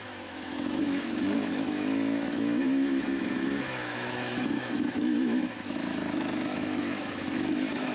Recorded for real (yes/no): no